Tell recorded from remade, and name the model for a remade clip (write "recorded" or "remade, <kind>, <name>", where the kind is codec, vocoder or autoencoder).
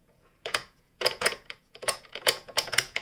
remade, vocoder, Vocos